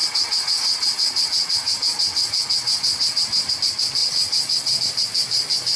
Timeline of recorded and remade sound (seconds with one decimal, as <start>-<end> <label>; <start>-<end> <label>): 0.0-3.5 remade; 3.5-4.0 recorded; 4.0-4.8 remade; 4.8-5.8 recorded

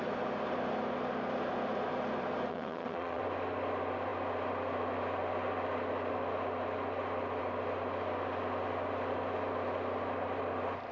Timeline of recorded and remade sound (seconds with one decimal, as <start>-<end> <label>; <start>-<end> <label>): 0.0-2.5 recorded; 2.5-3.2 remade; 3.2-10.9 recorded

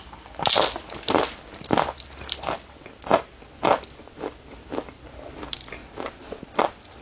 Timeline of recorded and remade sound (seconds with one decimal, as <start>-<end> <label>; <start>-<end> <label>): 0.0-7.0 recorded

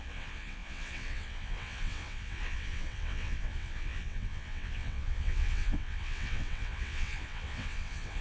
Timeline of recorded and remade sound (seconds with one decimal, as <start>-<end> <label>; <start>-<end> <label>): 0.0-8.2 remade

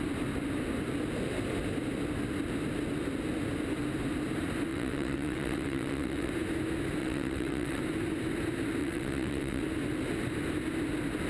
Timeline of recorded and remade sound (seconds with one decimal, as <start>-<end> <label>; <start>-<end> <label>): 0.0-4.7 recorded; 4.7-6.3 remade; 6.3-7.0 recorded; 7.0-7.8 remade; 7.8-8.8 recorded; 8.8-9.6 remade; 9.6-11.3 recorded